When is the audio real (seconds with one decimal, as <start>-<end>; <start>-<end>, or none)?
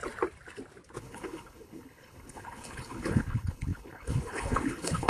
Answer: 0.0-1.0